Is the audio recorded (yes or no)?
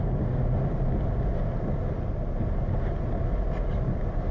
yes